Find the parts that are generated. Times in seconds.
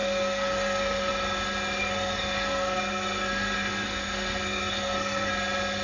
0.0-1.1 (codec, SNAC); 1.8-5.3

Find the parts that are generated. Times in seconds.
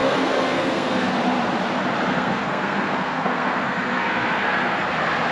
0.0-1.1 (codec, SNAC); 2.1-4.8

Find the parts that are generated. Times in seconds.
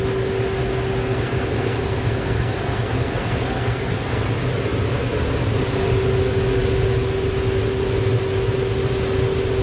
1.1-4.3 (codec, SNAC)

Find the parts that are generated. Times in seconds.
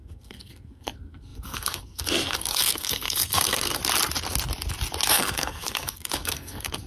0.0-3.8 (codec, SNAC); 5.1-6.9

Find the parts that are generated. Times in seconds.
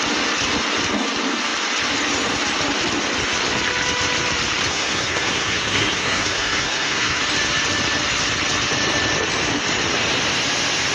4.7-7.2 (codec, SNAC)